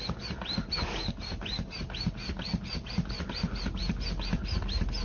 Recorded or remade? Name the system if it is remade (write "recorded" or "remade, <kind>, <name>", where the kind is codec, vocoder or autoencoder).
recorded